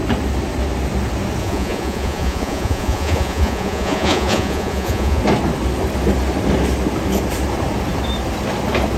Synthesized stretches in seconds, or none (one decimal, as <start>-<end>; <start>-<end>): 1.4-5.2